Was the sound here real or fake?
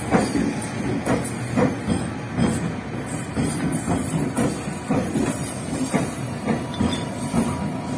real